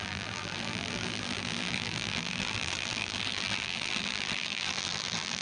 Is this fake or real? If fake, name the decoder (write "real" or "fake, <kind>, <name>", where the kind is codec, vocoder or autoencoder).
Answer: fake, vocoder, BigVGAN v2